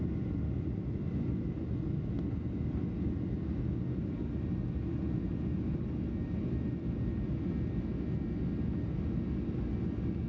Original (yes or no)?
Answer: yes